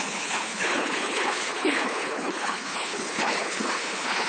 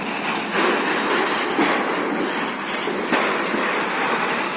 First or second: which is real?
second